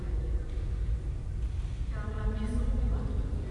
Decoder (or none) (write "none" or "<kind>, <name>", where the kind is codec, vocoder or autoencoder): none